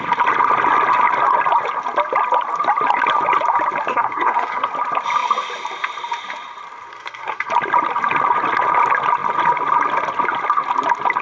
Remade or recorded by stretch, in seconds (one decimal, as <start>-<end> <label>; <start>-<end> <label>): 0.0-3.9 recorded; 3.9-4.7 remade; 4.7-6.9 recorded; 6.9-7.5 remade; 7.5-11.2 recorded